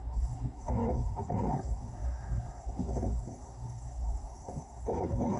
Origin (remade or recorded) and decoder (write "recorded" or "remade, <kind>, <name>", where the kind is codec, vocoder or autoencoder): remade, codec, SNAC